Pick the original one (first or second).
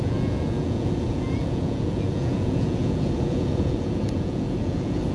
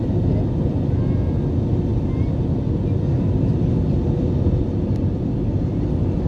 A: second